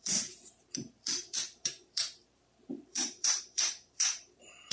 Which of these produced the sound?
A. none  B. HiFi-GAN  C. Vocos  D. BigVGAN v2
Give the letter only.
D